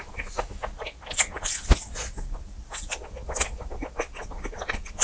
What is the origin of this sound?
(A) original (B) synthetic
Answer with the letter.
A